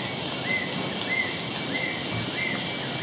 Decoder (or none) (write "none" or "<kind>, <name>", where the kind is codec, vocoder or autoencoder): none